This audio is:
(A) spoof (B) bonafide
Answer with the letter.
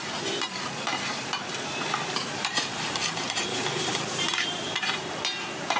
A